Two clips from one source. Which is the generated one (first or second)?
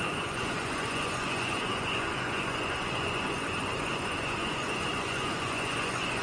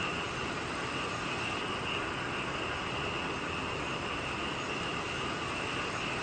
first